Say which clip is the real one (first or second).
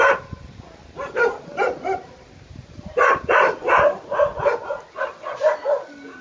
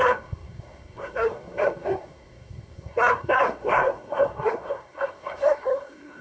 first